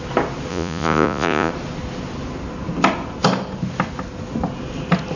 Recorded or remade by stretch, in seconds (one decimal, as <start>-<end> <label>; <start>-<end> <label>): 0.0-0.5 recorded; 0.5-1.5 remade; 1.5-5.2 recorded